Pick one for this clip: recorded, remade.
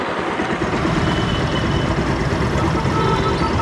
recorded